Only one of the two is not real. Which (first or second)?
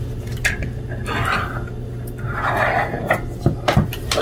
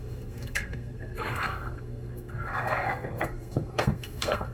second